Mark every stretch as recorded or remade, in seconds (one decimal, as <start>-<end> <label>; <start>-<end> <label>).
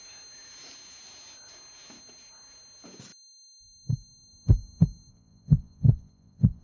0.0-5.1 recorded; 5.1-6.6 remade